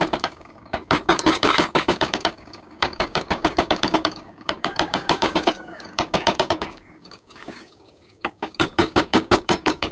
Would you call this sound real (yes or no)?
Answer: no